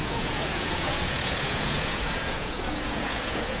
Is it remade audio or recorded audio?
remade